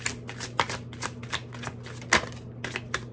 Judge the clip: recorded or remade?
recorded